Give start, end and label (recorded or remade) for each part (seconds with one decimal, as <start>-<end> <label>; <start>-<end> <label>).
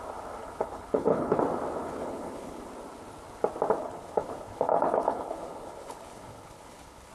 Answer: 0.0-0.4 recorded; 0.4-1.4 remade; 1.4-1.8 recorded; 1.8-2.7 remade; 2.7-3.8 recorded; 3.8-7.1 remade